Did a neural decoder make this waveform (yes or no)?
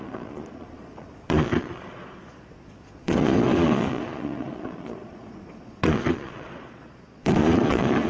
yes